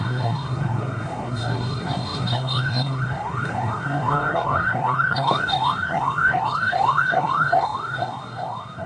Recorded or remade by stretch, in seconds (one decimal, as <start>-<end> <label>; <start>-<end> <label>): 0.0-8.9 remade

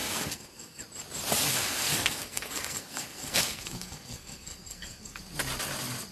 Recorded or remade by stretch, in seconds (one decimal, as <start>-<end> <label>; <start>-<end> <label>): 0.0-0.8 remade; 0.8-1.5 recorded; 1.5-5.2 remade; 5.2-6.1 recorded

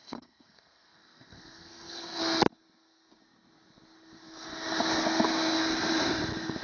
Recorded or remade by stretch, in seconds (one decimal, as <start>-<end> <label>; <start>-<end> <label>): 0.0-2.2 remade; 2.2-6.6 recorded

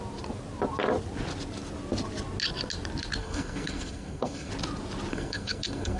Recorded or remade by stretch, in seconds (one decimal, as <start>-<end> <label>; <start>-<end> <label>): 0.0-3.2 recorded; 3.2-4.5 remade; 4.5-5.1 recorded; 5.1-6.0 remade

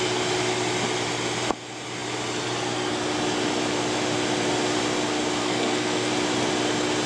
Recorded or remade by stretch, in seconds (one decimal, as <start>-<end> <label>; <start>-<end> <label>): 0.0-5.4 recorded; 5.4-6.1 remade; 6.1-7.1 recorded